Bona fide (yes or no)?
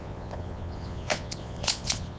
no